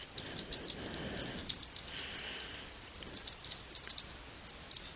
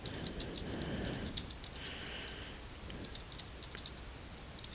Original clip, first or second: second